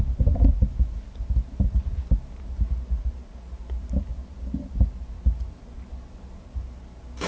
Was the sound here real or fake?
real